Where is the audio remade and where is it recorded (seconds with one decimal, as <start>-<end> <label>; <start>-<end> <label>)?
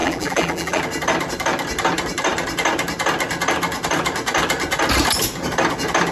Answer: 0.0-0.8 remade; 0.8-6.1 recorded